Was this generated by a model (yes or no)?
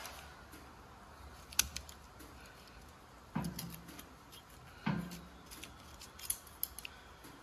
no